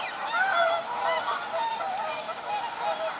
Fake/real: real